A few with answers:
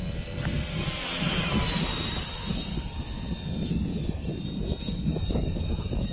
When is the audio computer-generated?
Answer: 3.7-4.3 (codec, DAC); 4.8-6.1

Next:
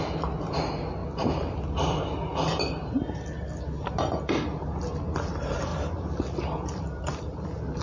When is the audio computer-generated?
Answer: none

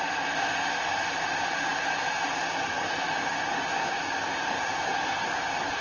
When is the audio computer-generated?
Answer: none

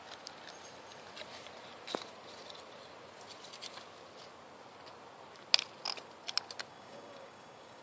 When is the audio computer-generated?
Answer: 6.7-7.8 (codec, DAC)

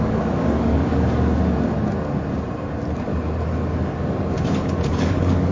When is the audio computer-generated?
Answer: 0.0-1.4 (codec, DAC); 4.5-5.5

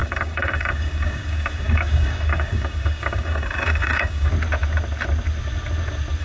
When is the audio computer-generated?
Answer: 0.0-4.3 (codec, DAC)

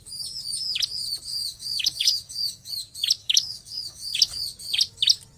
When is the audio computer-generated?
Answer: 1.3-2.7 (codec, DAC); 3.2-4.4